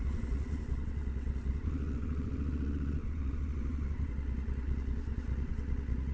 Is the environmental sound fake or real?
fake